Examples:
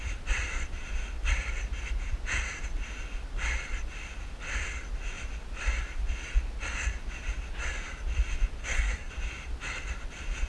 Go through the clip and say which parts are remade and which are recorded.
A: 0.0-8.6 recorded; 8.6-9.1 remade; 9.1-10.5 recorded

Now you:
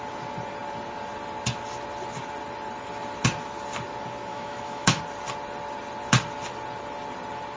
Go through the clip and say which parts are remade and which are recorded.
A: 0.0-4.3 recorded; 4.3-5.0 remade; 5.0-7.6 recorded

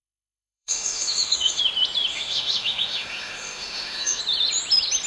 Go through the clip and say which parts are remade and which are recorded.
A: 0.0-1.6 remade; 1.6-2.1 recorded; 2.1-4.2 remade; 4.2-5.1 recorded

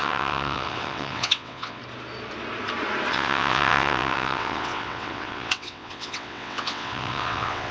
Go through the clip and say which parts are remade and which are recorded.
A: 0.0-1.8 remade; 1.8-3.1 recorded; 3.1-7.7 remade

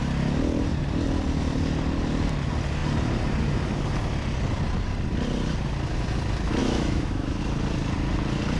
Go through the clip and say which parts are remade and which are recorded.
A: 0.0-6.6 recorded; 6.6-7.4 remade; 7.4-8.6 recorded

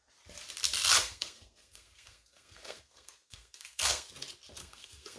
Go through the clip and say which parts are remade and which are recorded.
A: 0.0-1.0 recorded; 1.0-4.1 remade; 4.1-4.6 recorded; 4.6-5.2 remade

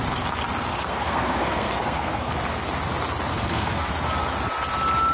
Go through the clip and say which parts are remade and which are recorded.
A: 0.0-0.7 recorded; 0.7-2.3 remade; 2.3-3.3 recorded; 3.3-3.9 remade; 3.9-5.1 recorded